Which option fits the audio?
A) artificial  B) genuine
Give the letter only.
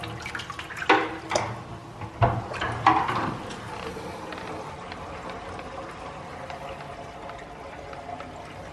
B